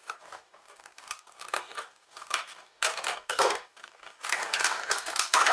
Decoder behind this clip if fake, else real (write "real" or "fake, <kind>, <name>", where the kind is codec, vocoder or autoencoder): fake, codec, DAC